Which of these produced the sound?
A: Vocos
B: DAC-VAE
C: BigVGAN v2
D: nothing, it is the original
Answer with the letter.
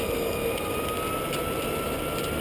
D